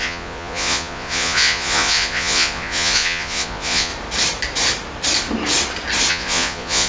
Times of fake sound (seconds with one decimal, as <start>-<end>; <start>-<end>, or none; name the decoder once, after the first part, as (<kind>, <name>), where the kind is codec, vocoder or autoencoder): 0.0-3.9 (vocoder, Vocos); 6.1-6.9